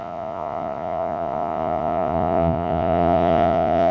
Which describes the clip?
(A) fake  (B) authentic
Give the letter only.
A